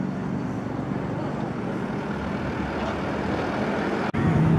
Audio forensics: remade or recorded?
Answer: recorded